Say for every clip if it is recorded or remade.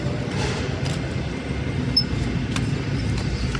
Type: recorded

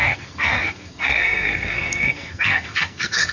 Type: remade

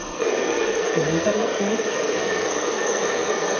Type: remade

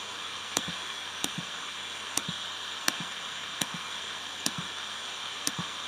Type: remade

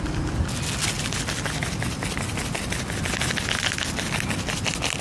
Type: recorded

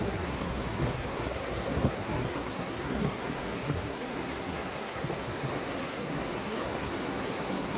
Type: remade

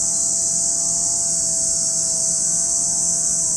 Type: recorded